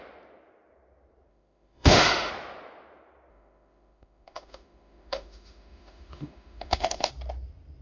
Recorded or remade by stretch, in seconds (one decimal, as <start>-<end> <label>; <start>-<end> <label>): 0.0-1.3 recorded; 1.3-2.3 remade; 2.3-3.3 recorded; 3.3-7.1 remade; 7.1-7.8 recorded

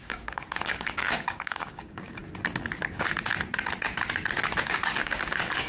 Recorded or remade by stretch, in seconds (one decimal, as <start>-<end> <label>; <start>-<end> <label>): 0.0-2.2 remade; 2.2-4.6 recorded; 4.6-5.7 remade